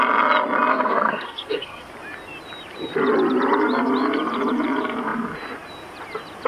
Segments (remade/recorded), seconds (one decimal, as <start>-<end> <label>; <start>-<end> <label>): 0.0-0.7 recorded; 0.7-1.9 remade; 1.9-6.5 recorded